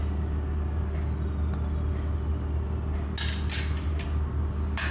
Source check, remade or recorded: recorded